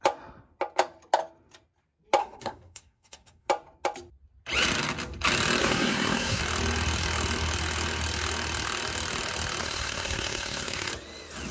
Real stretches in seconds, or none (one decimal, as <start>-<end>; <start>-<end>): 0.0-2.2; 3.5-5.6; 6.4-9.6; 10.9-11.5